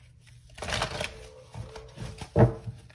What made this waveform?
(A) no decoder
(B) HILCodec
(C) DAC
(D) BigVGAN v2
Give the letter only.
A